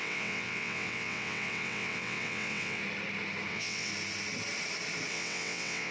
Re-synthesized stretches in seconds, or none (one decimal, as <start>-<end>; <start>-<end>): 0.0-2.8; 3.5-3.9; 5.1-5.9